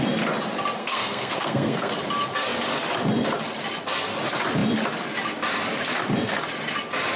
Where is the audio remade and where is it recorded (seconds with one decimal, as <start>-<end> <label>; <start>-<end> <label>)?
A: 0.0-0.8 recorded; 0.8-1.9 remade; 1.9-7.2 recorded